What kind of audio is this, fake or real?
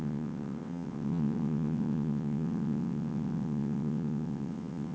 fake